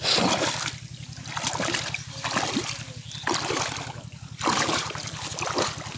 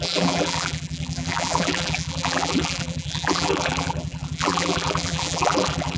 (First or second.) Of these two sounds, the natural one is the first